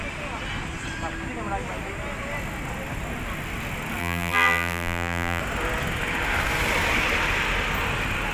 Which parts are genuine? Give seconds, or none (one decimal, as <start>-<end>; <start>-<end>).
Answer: 0.0-4.0; 5.4-8.3